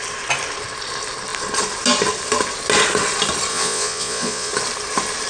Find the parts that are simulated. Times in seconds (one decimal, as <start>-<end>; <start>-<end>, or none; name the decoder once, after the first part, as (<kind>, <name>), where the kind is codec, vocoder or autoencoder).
3.5-4.5 (vocoder, Vocos)